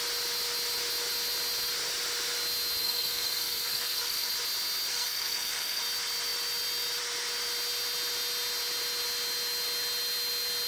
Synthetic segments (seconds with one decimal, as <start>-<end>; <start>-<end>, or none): 2.8-4.3; 4.9-5.8